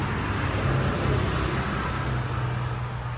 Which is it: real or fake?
real